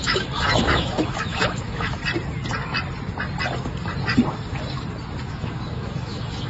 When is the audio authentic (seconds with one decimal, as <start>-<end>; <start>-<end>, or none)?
2.0-5.3